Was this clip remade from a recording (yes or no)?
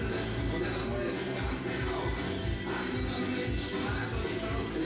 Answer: no